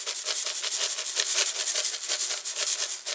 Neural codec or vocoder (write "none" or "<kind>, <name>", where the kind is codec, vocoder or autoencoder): none